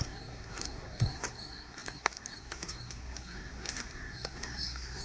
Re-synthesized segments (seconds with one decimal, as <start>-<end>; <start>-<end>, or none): 0.0-5.0